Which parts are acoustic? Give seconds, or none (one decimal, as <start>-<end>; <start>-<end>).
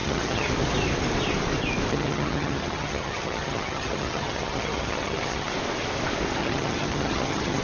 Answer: 0.5-1.9; 5.5-6.4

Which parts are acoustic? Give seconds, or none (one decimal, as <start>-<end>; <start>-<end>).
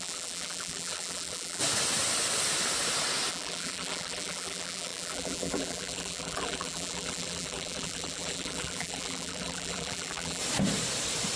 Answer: 1.6-3.3; 10.4-11.4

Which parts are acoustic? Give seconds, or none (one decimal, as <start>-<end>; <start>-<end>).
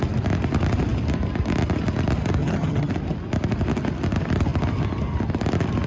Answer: 0.0-2.4; 2.9-5.9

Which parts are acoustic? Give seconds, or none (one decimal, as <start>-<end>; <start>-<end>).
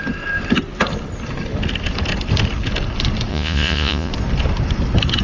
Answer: 0.0-3.3; 4.1-5.2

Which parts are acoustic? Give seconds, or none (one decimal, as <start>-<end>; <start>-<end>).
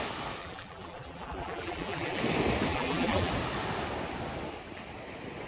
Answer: 0.0-0.4; 2.2-2.7; 3.3-5.5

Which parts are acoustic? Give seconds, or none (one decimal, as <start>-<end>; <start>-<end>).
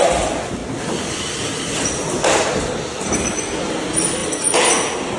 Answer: 0.0-5.2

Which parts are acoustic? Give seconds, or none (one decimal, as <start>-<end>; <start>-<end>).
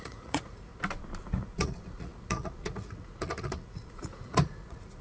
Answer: 0.7-1.2